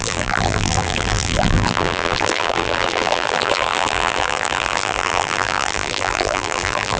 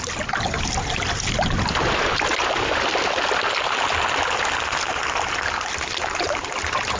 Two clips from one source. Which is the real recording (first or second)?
second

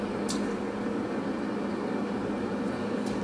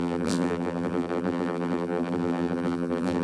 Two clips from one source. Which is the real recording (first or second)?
first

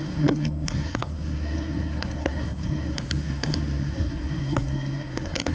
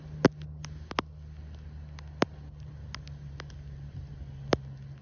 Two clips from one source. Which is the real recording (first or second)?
second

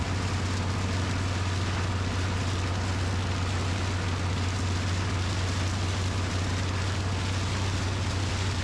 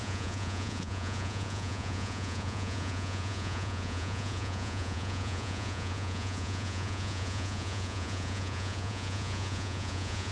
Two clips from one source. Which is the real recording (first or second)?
first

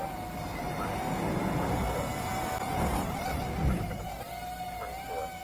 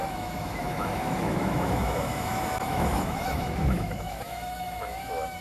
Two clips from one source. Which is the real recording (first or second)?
first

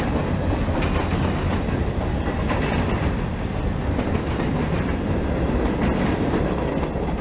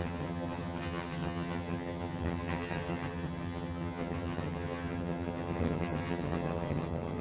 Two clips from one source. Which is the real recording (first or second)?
first